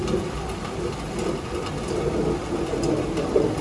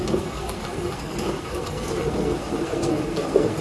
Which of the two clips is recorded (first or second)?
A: first